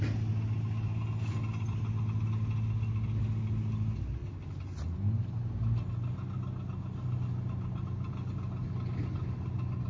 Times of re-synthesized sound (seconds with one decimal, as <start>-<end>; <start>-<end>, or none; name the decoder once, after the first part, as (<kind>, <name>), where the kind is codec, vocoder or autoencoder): none